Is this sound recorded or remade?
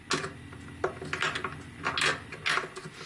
recorded